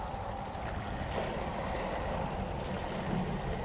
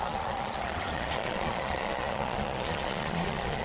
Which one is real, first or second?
first